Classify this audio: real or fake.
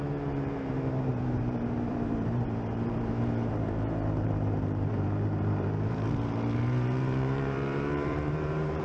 fake